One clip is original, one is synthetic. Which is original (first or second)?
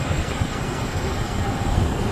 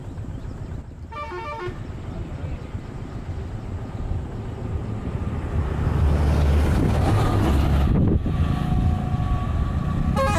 second